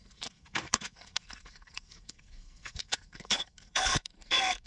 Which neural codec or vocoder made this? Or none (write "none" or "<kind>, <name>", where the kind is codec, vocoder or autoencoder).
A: codec, SNAC